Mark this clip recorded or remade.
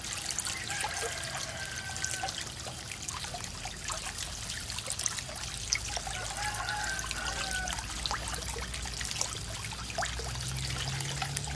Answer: recorded